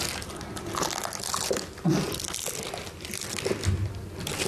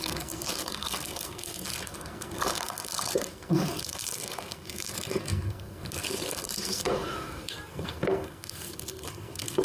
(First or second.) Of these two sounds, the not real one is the second